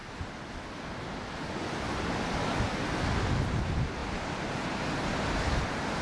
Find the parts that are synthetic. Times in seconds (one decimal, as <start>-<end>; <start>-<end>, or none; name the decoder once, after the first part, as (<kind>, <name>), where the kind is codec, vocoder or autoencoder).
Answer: none